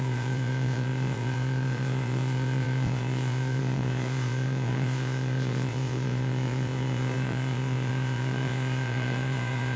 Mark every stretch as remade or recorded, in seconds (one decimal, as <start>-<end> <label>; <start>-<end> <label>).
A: 0.0-9.8 remade